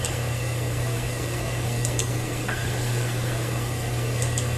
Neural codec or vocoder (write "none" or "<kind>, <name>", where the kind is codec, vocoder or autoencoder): codec, SNAC